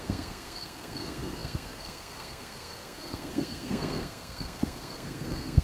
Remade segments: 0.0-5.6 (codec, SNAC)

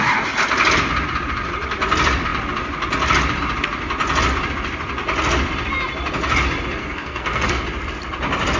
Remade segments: 6.8-7.6 (codec, SNAC)

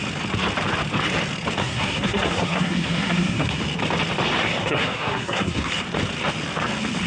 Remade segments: 1.6-3.6 (codec, SNAC); 4.6-5.7